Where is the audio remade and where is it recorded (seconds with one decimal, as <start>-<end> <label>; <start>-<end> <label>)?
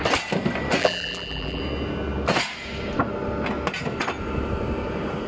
0.0-0.8 recorded; 0.8-1.6 remade; 1.6-5.3 recorded